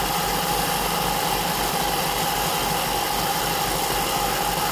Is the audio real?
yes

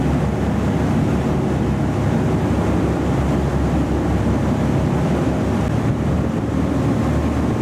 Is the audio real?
yes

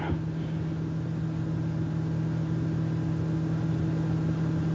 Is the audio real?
yes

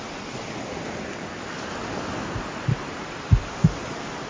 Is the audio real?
yes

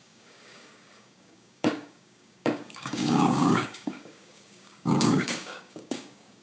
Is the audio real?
no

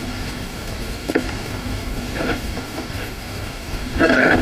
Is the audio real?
no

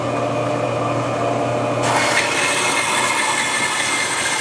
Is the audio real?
yes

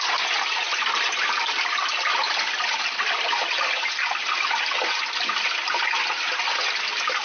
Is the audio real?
yes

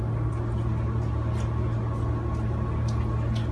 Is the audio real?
yes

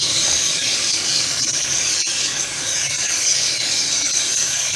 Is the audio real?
no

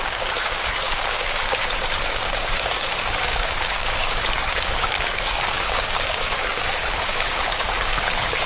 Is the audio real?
no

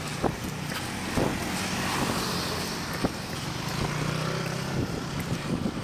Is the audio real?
yes